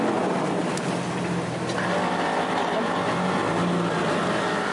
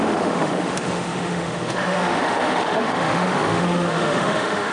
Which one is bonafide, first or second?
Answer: first